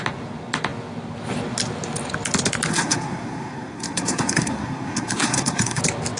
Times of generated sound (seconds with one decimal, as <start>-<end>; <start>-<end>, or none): 2.7-5.8